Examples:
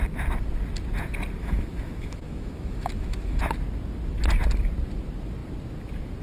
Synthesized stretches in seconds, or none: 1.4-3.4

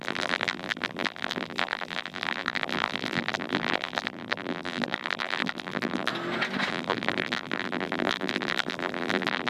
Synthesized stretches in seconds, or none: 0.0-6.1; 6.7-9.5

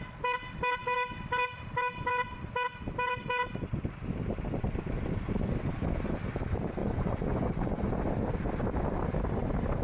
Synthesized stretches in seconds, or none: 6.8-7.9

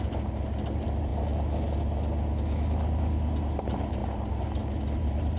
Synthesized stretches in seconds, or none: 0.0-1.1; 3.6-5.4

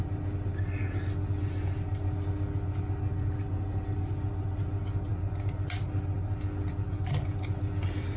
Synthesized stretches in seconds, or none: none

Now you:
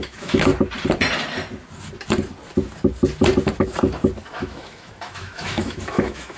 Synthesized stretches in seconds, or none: 0.0-0.5; 4.3-6.4

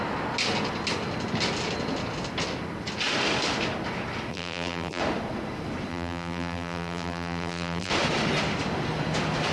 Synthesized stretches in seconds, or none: 4.3-5.0; 5.9-7.9

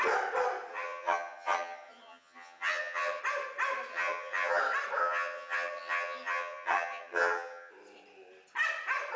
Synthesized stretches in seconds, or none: 0.7-3.2; 3.9-4.6; 5.0-7.7